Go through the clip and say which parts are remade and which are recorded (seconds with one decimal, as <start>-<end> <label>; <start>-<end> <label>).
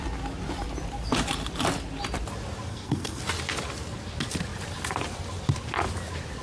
0.0-2.7 recorded; 2.7-3.2 remade; 3.2-6.4 recorded